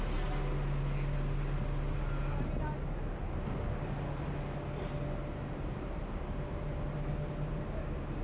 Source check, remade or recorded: recorded